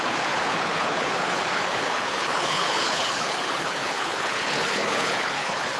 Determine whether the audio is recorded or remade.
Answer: remade